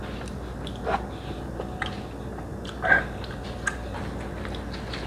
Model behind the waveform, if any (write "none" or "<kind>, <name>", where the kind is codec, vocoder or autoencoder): none